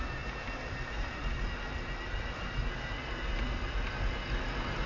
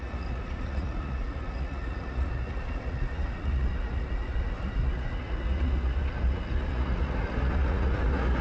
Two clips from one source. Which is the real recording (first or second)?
first